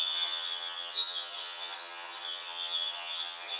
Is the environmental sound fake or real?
fake